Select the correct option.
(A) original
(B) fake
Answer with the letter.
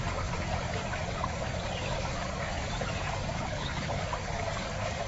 B